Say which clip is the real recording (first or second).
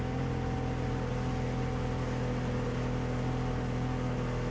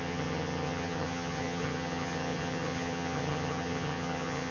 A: first